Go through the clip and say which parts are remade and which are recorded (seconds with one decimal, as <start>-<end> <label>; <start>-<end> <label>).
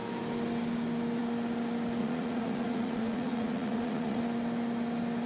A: 0.0-2.0 recorded; 2.0-4.2 remade; 4.2-5.3 recorded